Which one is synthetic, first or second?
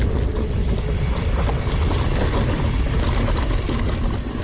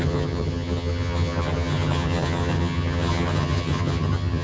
second